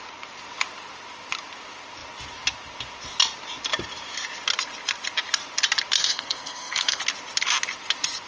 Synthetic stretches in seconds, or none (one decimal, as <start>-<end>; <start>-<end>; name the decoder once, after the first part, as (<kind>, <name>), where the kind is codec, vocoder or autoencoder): 6.0-7.0 (codec, SNAC)